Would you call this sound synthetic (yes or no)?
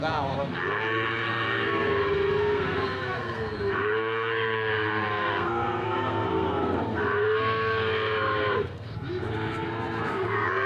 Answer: yes